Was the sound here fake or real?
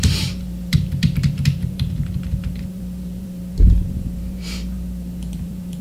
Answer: fake